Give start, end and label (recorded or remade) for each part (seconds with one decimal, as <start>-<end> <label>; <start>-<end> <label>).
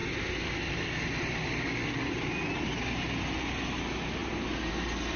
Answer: 0.0-5.2 recorded